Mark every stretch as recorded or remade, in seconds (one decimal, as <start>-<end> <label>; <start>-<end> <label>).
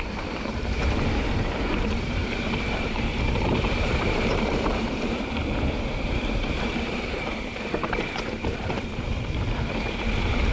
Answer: 0.0-10.5 remade